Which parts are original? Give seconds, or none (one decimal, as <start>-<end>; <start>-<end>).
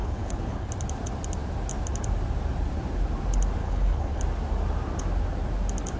0.7-3.6; 4.2-6.0